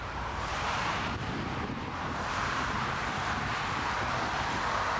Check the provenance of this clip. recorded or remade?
remade